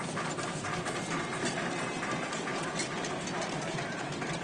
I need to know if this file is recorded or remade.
recorded